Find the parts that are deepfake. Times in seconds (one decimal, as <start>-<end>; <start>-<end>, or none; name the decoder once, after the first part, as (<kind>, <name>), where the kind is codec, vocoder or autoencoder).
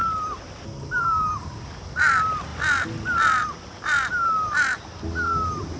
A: none